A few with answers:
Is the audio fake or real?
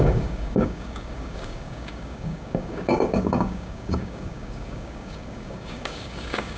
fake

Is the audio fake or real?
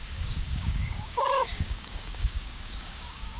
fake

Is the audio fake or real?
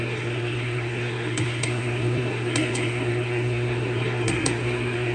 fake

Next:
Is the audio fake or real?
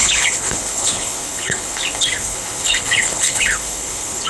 fake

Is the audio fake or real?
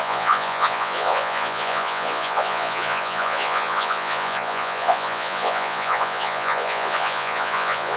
fake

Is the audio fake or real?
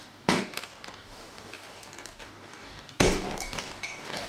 fake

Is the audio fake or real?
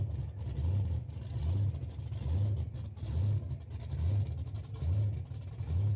real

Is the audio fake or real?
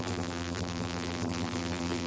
fake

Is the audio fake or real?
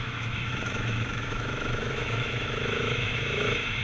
fake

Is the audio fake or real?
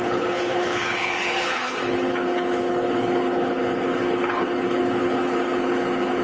fake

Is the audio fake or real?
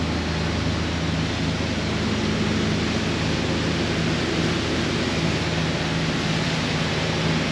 real